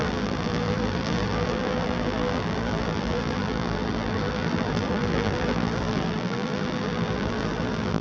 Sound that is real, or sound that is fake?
fake